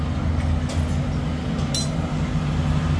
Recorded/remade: recorded